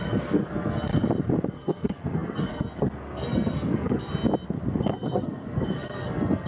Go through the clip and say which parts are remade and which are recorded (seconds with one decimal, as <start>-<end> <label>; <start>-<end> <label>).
0.0-0.9 remade; 0.9-1.5 recorded; 1.5-4.1 remade; 4.1-4.7 recorded; 4.7-6.5 remade